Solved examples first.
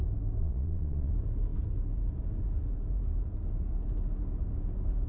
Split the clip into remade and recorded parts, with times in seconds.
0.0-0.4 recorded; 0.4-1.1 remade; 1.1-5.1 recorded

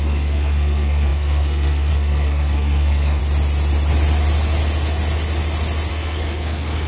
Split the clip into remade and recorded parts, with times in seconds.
0.0-3.2 remade; 3.2-5.9 recorded; 5.9-6.9 remade

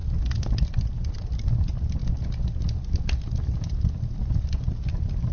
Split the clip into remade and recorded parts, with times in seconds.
0.0-5.3 recorded

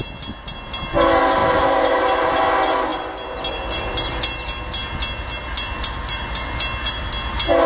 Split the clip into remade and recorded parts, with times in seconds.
0.0-7.7 recorded

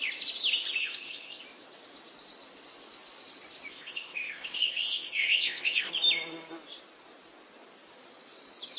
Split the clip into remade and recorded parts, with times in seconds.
0.0-0.8 recorded; 0.8-1.4 remade; 1.4-3.7 recorded; 3.7-5.9 remade; 5.9-8.8 recorded

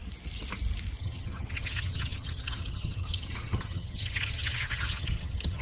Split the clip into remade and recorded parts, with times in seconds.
0.0-1.0 recorded; 1.0-5.6 remade

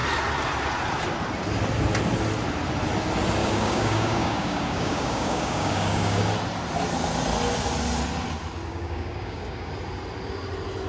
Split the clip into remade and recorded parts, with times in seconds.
0.0-3.4 recorded; 3.4-6.2 remade; 6.2-8.7 recorded; 8.7-9.7 remade; 9.7-10.9 recorded

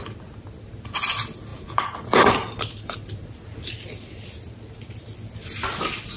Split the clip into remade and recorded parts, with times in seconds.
0.0-1.5 recorded; 1.5-2.3 remade; 2.3-6.2 recorded